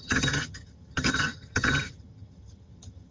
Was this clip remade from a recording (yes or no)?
yes